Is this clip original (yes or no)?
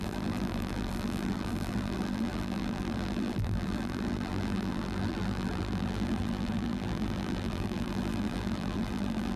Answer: no